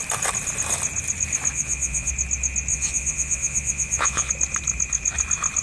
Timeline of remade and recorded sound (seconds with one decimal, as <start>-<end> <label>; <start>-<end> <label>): 0.0-1.5 recorded; 1.5-2.1 remade; 2.1-2.7 recorded; 2.7-4.3 remade; 4.3-5.6 recorded